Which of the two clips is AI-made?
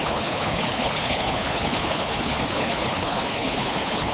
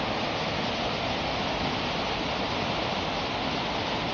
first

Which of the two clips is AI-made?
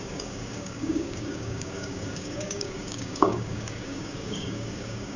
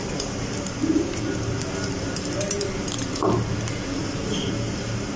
first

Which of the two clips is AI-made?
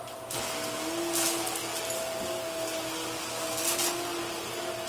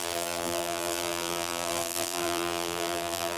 second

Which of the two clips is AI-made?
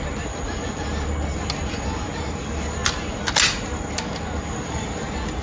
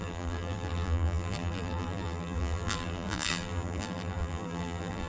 second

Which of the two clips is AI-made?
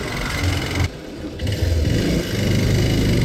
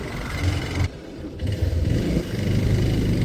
second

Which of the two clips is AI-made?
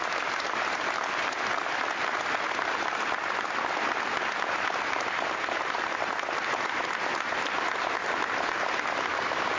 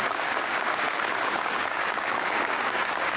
second